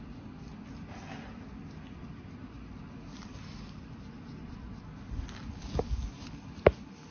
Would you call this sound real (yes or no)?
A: yes